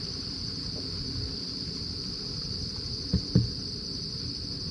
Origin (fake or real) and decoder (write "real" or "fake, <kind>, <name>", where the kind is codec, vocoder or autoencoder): real